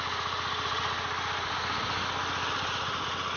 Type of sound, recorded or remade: recorded